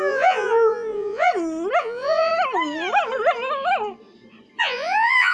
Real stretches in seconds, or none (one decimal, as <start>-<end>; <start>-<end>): 1.3-1.8; 2.3-4.6